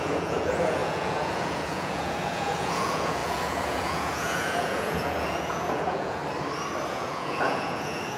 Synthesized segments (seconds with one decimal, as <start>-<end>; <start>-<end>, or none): 0.0-6.2; 6.9-8.2